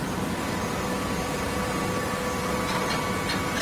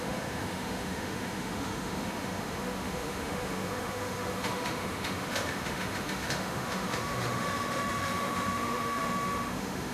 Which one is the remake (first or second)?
second